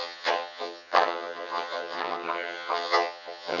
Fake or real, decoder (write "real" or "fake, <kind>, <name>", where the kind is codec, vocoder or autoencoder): fake, vocoder, HiFi-GAN